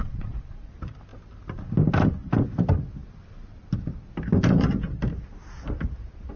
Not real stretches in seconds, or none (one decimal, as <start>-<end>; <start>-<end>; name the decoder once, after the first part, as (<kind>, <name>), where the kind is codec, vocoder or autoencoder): 0.0-0.7 (vocoder, Vocos)